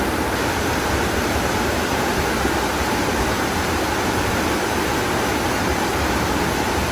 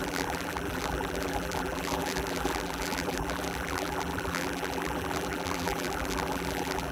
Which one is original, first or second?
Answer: first